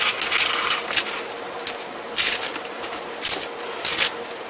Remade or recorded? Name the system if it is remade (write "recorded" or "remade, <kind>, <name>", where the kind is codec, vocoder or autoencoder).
recorded